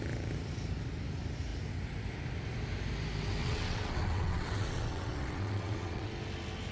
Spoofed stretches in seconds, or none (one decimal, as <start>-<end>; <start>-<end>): 3.4-6.1